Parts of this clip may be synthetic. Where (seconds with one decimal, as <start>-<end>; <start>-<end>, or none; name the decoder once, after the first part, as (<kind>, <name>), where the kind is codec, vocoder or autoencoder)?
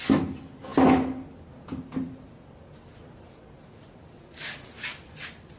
none